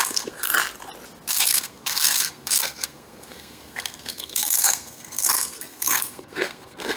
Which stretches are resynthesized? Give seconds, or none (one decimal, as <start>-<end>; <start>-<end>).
0.0-0.5; 1.3-7.0